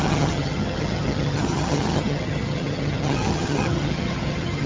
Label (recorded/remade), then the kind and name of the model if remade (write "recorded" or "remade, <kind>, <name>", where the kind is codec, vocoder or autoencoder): remade, vocoder, HiFi-GAN